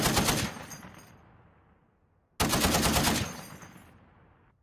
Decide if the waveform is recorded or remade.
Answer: recorded